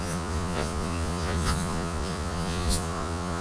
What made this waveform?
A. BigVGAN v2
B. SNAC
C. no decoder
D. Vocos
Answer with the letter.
D